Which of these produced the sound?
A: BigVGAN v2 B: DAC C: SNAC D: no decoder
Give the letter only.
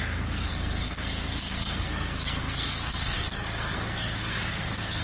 C